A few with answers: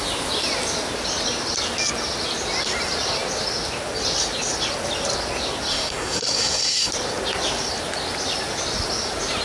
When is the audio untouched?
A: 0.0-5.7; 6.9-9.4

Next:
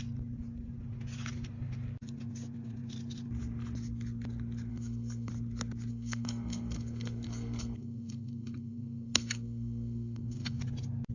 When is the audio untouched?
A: 0.0-4.7; 5.3-5.9; 10.6-11.1

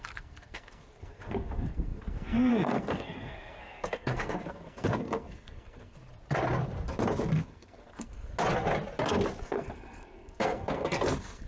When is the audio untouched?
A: 6.0-7.4; 8.3-9.4

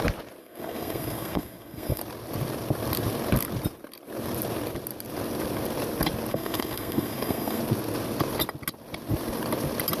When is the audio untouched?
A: 0.0-0.4; 2.0-6.3; 7.6-10.0

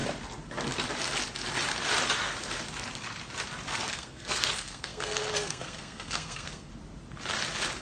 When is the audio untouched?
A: 0.0-3.9; 6.7-7.8

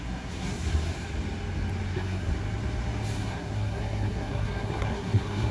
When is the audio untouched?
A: 0.9-1.9; 2.3-3.1